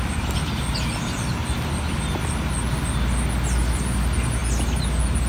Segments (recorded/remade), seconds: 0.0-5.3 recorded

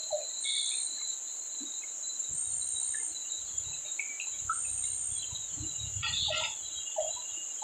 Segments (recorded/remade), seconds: 0.0-2.3 recorded; 2.3-3.2 remade; 3.2-4.4 recorded; 4.4-6.1 remade; 6.1-7.6 recorded

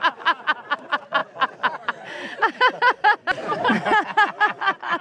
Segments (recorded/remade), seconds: 0.0-5.0 recorded

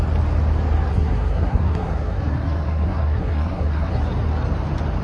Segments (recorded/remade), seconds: 0.0-0.9 recorded; 0.9-3.9 remade; 3.9-5.0 recorded

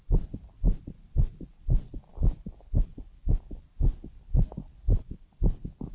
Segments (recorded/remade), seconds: 0.0-5.9 recorded

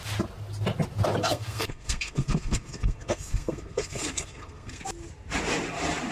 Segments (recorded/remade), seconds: 0.0-1.2 recorded; 1.2-4.8 remade; 4.8-6.1 recorded

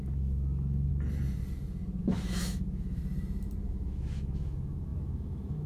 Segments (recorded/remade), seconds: 0.0-0.9 remade; 0.9-2.0 recorded; 2.0-3.0 remade; 3.0-3.7 recorded; 3.7-5.7 remade

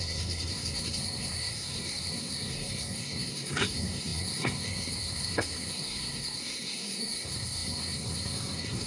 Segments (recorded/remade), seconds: 0.0-8.9 remade